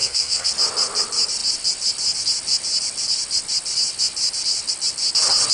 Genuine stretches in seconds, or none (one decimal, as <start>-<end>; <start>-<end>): 0.5-5.5